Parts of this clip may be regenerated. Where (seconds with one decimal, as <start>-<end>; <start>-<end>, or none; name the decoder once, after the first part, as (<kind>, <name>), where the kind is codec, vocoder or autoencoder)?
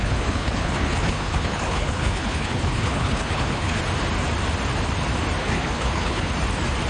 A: 0.0-3.8 (codec, HILCodec); 5.4-6.3